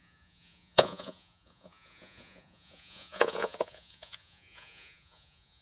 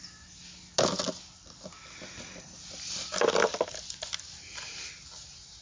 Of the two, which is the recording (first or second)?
second